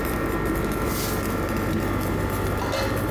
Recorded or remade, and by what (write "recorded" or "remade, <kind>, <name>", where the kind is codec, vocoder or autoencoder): recorded